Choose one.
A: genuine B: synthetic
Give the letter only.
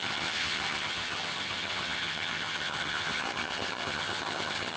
B